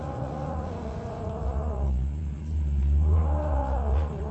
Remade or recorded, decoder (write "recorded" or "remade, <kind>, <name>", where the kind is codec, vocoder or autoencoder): remade, vocoder, Vocos